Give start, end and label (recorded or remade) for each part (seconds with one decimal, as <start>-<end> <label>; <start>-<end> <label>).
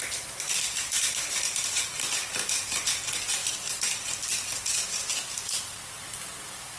0.0-3.4 remade; 3.4-5.6 recorded; 5.6-6.8 remade